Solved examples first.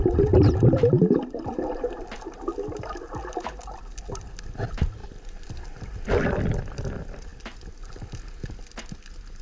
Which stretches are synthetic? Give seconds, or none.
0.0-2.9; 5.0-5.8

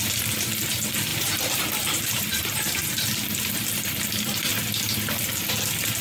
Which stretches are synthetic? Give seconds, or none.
1.1-2.9

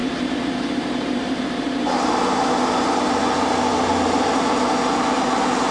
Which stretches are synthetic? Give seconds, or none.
0.0-1.8

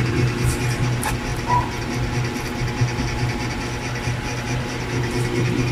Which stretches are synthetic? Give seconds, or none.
none

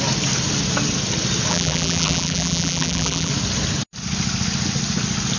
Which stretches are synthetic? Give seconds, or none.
1.5-3.3